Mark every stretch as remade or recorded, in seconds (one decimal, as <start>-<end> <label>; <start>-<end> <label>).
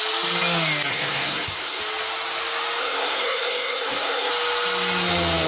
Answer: 0.0-0.9 recorded; 0.9-1.8 remade; 1.8-2.8 recorded; 2.8-4.3 remade; 4.3-5.5 recorded